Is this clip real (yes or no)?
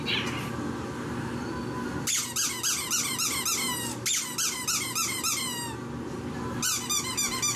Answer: yes